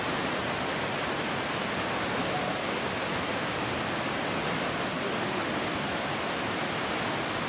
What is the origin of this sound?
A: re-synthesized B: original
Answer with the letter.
B